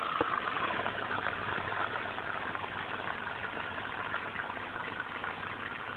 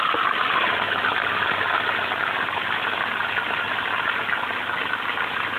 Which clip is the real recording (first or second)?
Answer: second